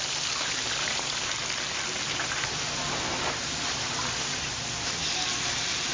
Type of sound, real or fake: real